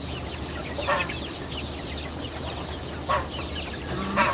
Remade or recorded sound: recorded